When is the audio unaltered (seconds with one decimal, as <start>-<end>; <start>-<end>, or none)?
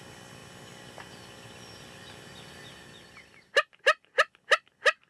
0.0-5.1